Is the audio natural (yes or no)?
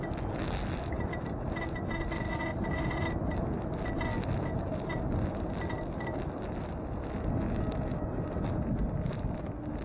yes